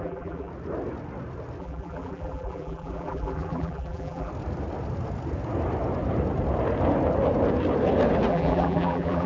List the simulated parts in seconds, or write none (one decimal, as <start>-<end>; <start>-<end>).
0.0-0.5; 1.6-4.3; 8.3-9.3